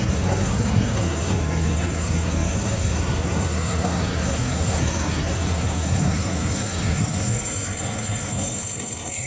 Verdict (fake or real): fake